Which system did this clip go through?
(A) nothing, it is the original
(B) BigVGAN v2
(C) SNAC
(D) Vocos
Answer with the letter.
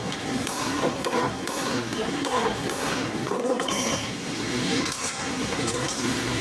C